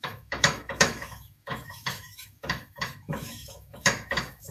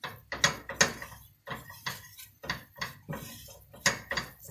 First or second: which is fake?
first